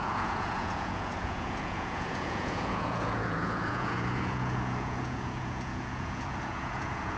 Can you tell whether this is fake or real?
fake